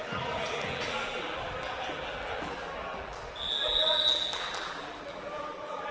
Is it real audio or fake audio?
fake